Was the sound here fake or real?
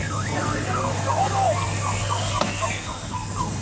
fake